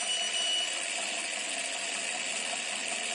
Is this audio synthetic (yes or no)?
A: no